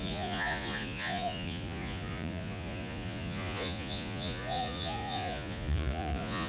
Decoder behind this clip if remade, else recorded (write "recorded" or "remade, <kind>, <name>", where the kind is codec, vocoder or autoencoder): remade, vocoder, Vocos